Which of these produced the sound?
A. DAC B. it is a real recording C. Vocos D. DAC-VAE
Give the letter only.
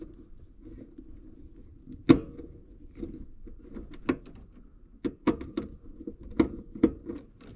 B